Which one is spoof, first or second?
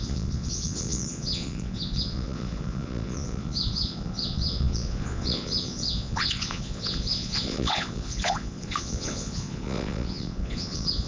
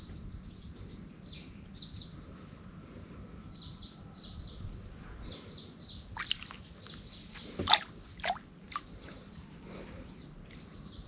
first